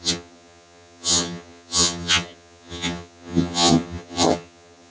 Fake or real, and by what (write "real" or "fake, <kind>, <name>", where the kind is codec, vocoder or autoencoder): fake, vocoder, HiFi-GAN